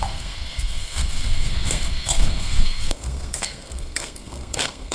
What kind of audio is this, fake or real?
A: fake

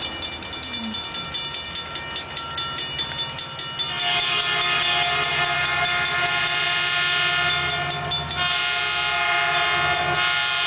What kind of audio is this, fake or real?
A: real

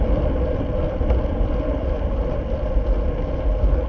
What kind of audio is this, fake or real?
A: real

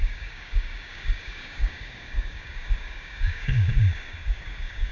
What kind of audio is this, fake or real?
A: fake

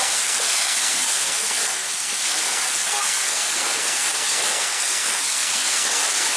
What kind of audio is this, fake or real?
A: fake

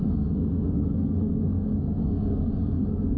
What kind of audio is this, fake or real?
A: fake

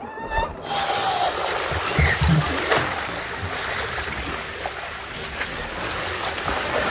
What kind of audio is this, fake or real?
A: real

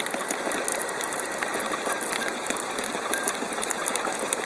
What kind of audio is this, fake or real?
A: fake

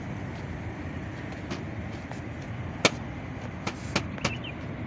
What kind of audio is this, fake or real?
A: real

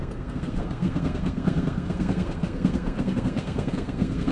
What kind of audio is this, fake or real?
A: fake